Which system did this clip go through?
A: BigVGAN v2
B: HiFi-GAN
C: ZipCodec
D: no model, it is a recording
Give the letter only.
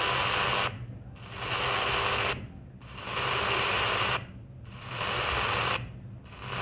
D